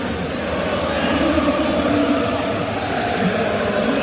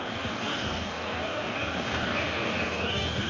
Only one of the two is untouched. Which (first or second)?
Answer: first